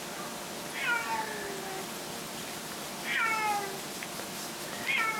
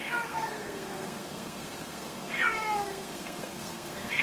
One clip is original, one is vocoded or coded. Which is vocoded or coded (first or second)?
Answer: second